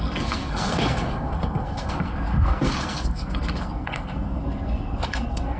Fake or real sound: fake